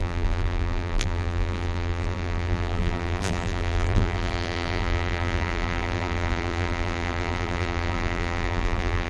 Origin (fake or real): fake